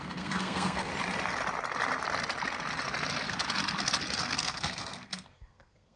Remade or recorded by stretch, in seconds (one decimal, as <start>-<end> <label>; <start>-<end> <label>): 0.0-0.9 remade; 0.9-4.2 recorded; 4.2-6.0 remade